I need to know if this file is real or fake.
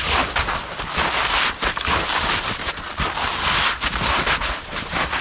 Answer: real